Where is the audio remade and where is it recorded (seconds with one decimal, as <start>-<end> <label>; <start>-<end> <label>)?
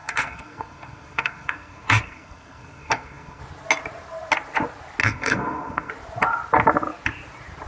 0.0-3.4 remade; 3.4-5.0 recorded; 5.0-5.9 remade; 5.9-7.7 recorded